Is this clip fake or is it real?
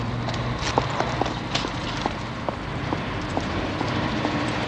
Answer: fake